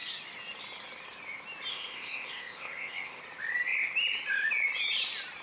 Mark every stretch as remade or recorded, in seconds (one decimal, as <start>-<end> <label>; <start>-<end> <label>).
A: 0.0-1.7 recorded; 1.7-3.2 remade; 3.2-5.4 recorded